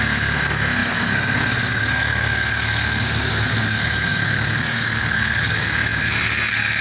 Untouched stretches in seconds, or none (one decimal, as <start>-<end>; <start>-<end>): none